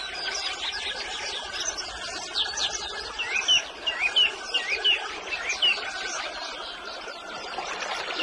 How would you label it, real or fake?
real